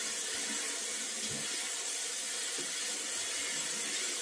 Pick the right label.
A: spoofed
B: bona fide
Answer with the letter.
B